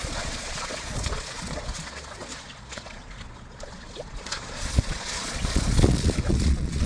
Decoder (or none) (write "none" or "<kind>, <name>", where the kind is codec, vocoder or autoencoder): vocoder, Vocos